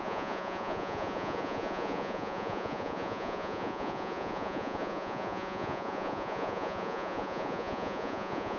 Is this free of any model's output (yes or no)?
no